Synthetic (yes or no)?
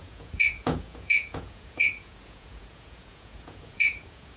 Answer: yes